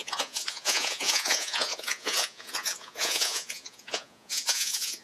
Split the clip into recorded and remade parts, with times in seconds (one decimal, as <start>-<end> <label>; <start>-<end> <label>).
0.0-5.0 remade